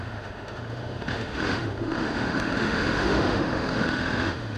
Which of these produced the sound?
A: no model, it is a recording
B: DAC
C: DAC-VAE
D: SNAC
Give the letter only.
C